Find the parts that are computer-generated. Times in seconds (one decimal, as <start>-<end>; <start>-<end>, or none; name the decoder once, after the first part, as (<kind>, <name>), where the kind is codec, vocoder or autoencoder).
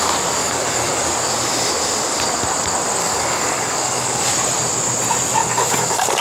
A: 0.4-1.1 (codec, DAC); 3.0-4.3; 5.4-6.2